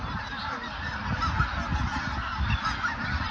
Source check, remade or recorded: recorded